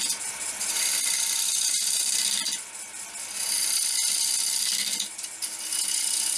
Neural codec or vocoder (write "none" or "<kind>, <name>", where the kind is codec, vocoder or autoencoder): none